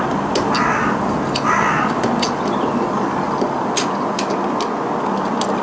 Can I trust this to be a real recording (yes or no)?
yes